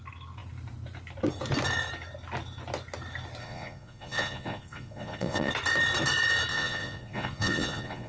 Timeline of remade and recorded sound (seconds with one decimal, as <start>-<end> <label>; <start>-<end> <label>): 0.0-3.4 recorded; 3.4-5.5 remade; 5.5-6.5 recorded; 6.5-8.1 remade